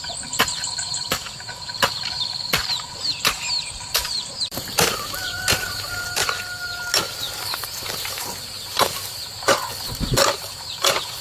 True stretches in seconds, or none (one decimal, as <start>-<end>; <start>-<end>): 6.2-7.1; 9.7-10.4

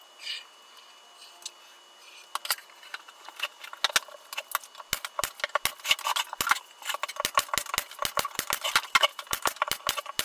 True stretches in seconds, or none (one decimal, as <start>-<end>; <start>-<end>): 0.0-2.6; 3.7-9.1; 9.6-10.2